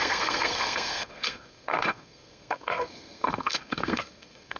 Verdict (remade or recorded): remade